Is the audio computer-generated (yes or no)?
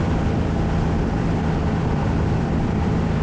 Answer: yes